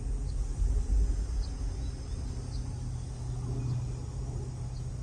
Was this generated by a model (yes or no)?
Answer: no